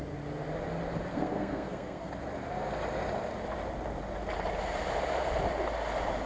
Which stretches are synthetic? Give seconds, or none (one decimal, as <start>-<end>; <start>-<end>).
1.1-2.1